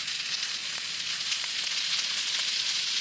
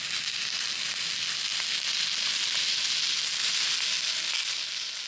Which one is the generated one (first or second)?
first